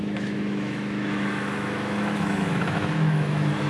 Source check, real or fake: fake